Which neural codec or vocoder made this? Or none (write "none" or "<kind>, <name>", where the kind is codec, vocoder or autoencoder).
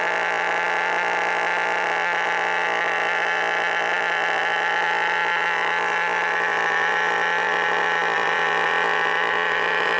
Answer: vocoder, BigVGAN v2